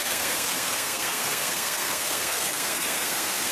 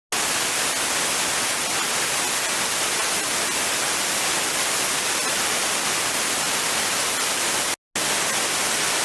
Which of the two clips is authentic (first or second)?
second